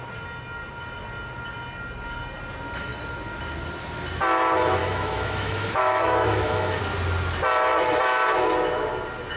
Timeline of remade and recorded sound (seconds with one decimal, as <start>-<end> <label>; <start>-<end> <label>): 0.0-4.8 recorded; 4.8-6.8 remade; 6.8-9.4 recorded